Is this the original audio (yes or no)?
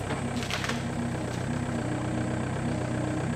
yes